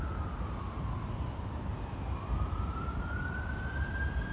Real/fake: real